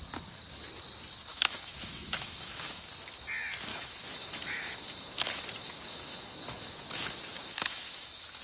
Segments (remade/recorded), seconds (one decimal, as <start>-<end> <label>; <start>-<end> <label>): 0.0-1.3 recorded; 1.3-2.9 remade; 2.9-3.7 recorded; 3.7-8.4 remade